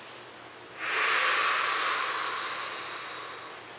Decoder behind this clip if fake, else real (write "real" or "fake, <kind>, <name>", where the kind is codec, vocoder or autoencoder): real